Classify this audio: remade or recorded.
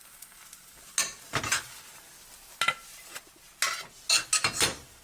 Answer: recorded